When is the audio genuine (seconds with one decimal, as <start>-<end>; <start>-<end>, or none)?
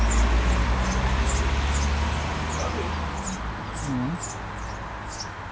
0.0-5.5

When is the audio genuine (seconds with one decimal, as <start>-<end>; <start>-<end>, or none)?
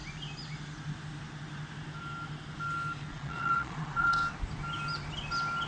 0.0-3.1; 4.1-5.7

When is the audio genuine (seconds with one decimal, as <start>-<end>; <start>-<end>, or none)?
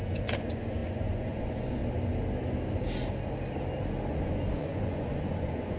1.8-4.1